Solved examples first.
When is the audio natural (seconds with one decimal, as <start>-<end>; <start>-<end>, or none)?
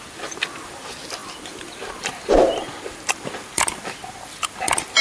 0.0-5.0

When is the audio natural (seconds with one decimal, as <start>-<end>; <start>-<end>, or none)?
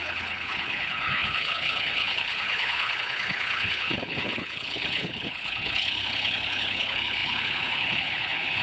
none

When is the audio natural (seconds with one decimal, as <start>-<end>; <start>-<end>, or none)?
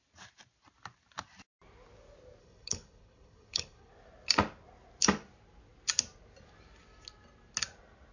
0.0-2.4; 3.9-8.1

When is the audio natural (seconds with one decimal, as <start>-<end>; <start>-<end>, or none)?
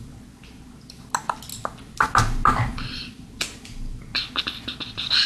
0.0-5.3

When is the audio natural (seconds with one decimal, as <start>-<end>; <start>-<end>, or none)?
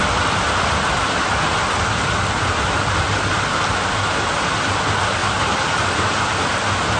0.0-7.0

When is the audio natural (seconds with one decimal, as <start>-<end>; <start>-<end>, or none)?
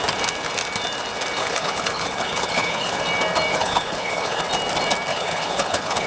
0.0-1.4; 3.0-3.5; 4.4-5.1